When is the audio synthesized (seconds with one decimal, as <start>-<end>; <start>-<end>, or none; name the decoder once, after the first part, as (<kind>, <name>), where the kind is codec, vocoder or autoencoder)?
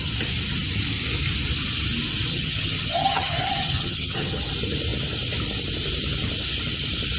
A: 2.3-4.4 (vocoder, HiFi-GAN)